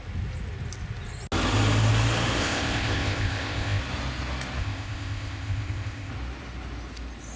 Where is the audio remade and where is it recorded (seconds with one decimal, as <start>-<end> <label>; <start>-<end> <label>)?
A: 0.0-2.4 recorded; 2.4-3.8 remade; 3.8-4.6 recorded; 4.6-6.1 remade; 6.1-7.4 recorded

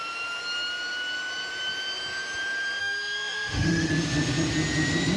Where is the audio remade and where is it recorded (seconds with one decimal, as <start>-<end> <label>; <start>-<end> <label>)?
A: 0.0-2.8 recorded; 2.8-3.9 remade; 3.9-5.2 recorded